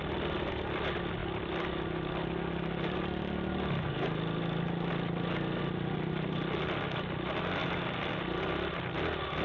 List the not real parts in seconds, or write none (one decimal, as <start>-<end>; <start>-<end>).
none